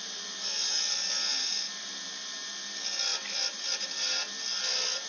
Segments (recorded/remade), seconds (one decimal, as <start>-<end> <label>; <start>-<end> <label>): 0.0-5.1 recorded